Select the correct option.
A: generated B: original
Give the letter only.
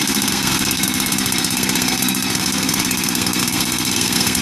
A